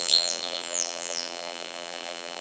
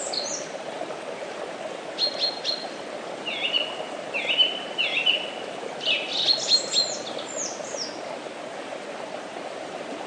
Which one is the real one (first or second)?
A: second